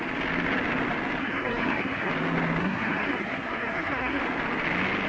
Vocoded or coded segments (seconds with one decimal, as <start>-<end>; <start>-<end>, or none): 1.2-2.1; 2.6-4.2